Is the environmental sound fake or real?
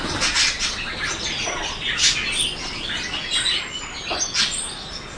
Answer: real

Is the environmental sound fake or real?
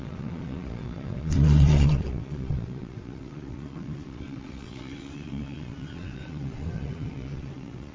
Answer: fake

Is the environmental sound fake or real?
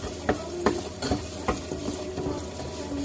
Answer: real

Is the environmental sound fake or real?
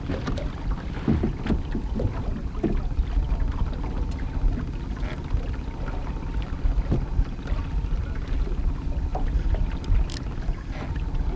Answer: real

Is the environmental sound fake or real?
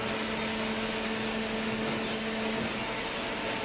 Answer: real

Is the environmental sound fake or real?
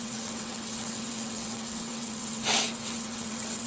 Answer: fake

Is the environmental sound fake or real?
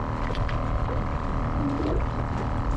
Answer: real